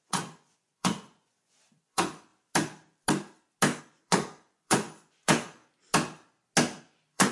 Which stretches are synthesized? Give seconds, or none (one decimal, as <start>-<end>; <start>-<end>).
0.0-2.3; 3.8-5.6; 6.8-7.3